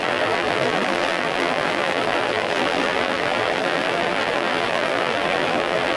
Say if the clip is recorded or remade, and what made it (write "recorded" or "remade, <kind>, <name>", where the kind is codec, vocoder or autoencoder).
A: remade, vocoder, BigVGAN v2